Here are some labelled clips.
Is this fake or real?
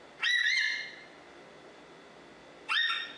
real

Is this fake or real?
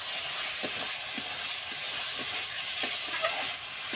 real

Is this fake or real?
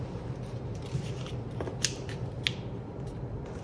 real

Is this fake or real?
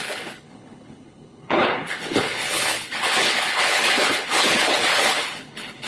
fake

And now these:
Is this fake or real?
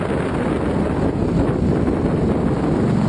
real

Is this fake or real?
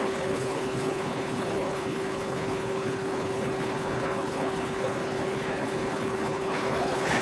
fake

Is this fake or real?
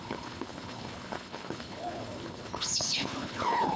fake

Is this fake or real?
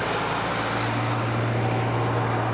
real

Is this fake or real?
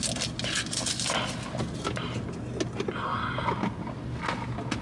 real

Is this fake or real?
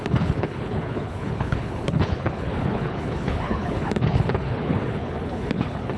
fake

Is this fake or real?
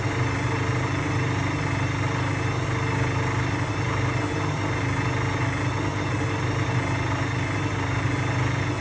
real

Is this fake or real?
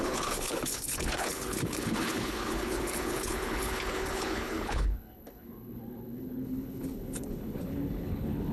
fake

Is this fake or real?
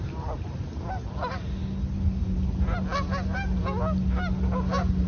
real